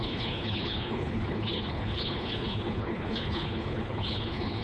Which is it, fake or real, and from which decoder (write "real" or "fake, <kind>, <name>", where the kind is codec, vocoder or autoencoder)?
fake, codec, HILCodec